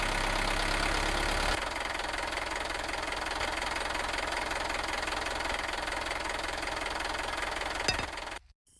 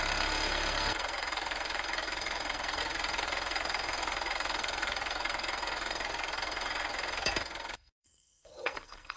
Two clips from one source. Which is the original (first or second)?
first